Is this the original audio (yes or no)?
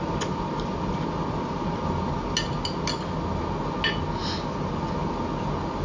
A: yes